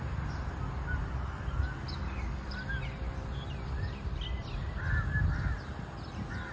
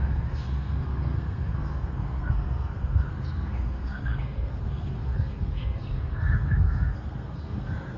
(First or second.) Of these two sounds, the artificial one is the second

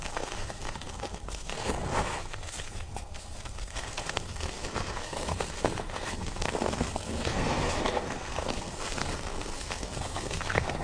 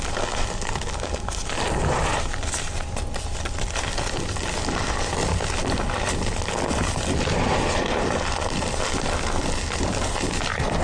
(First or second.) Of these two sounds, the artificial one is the first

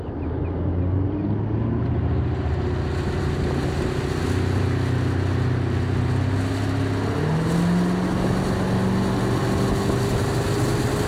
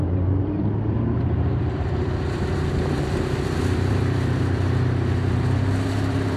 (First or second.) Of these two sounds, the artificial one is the second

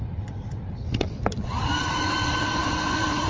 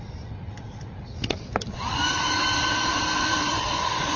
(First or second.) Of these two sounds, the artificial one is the first